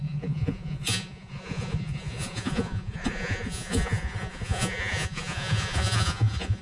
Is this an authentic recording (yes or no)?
no